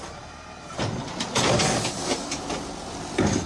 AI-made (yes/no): no